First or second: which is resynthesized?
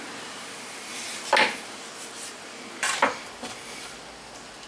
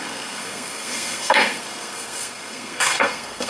second